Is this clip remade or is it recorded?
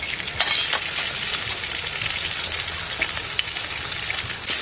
recorded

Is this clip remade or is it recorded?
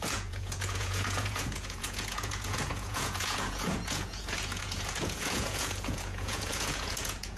remade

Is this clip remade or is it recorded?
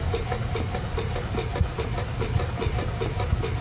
recorded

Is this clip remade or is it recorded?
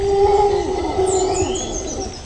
recorded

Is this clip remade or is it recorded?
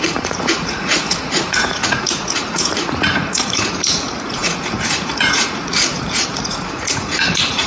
remade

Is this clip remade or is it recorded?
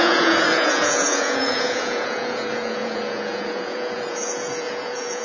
remade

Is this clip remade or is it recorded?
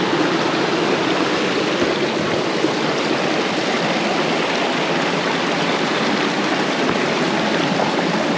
recorded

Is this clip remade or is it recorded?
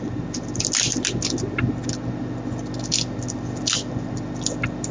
recorded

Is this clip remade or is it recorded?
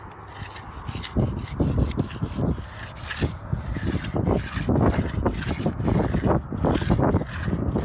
recorded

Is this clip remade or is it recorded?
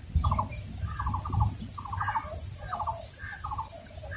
recorded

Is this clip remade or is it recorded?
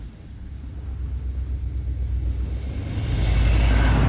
recorded